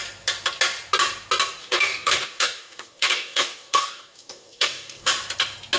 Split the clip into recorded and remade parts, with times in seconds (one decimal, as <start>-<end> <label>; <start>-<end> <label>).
0.0-1.6 recorded; 1.6-5.1 remade; 5.1-5.8 recorded